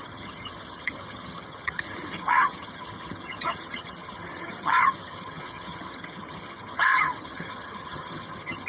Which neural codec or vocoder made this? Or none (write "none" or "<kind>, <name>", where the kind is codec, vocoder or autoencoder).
vocoder, HiFi-GAN